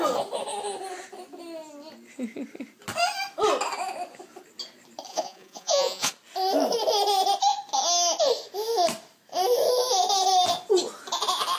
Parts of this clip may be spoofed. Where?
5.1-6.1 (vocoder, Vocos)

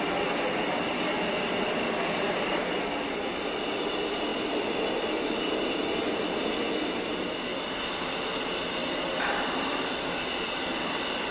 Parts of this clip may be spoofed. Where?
8.8-11.3 (vocoder, BigVGAN v2)

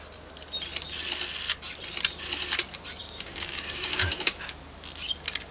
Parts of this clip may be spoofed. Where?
3.0-4.2 (codec, DAC)

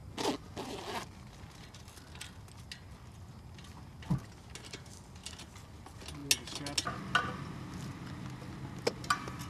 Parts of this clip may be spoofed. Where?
none

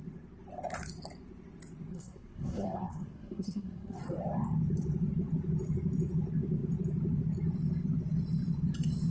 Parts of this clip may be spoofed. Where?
1.9-4.0 (codec, SNAC)

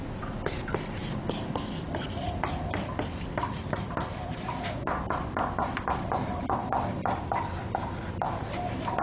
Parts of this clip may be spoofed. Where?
0.0-9.0 (vocoder, BigVGAN v2)